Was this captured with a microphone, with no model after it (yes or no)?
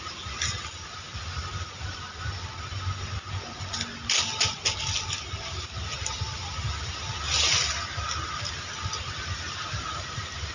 yes